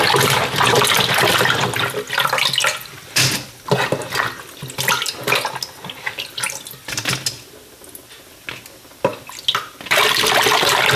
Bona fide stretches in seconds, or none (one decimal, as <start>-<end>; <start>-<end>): 0.0-11.0